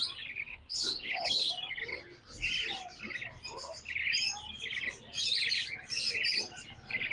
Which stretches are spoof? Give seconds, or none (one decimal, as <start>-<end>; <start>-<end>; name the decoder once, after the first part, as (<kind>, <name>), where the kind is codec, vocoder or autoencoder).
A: 0.5-1.5 (codec, HILCodec)